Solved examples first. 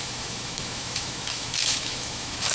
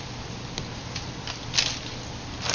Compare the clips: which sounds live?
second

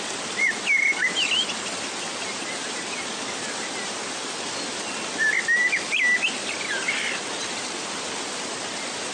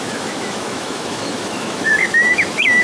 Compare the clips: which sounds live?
first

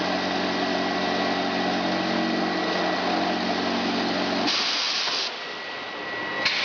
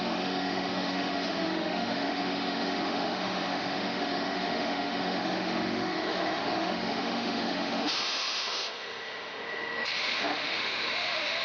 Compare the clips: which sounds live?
first